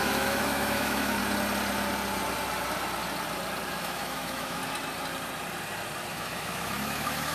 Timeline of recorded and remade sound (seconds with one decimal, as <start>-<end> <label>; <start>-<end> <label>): 0.0-1.2 remade; 1.2-3.7 recorded; 3.7-4.6 remade; 4.6-6.1 recorded; 6.1-7.3 remade